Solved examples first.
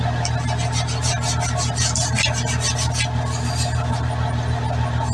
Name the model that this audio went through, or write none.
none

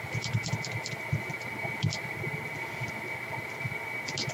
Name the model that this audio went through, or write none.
none